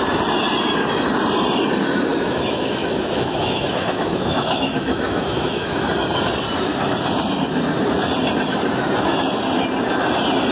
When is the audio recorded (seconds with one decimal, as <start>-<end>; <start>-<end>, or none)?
0.0-2.1; 5.8-10.5